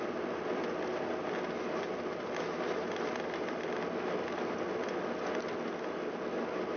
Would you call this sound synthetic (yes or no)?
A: no